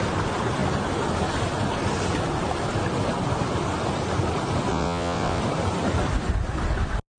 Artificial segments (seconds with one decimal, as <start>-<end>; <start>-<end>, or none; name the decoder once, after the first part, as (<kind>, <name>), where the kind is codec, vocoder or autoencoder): 4.7-5.4 (vocoder, WaveNeXt)